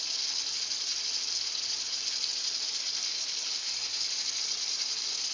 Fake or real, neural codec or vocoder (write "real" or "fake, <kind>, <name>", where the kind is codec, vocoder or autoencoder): real